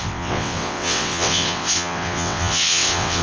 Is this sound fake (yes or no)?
yes